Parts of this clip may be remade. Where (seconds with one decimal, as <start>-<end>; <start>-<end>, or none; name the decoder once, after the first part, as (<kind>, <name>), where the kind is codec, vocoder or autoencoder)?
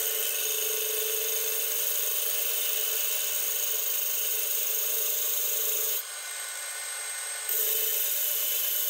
4.3-6.0 (vocoder, BigVGAN v2); 7.9-8.9